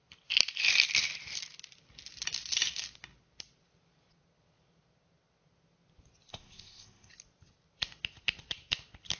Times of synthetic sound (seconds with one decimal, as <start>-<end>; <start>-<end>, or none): 6.3-7.1